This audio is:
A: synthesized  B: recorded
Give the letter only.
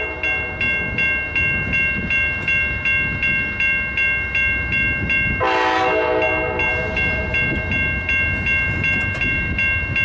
B